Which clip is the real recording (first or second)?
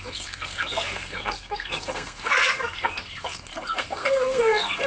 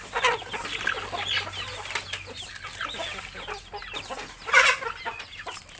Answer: second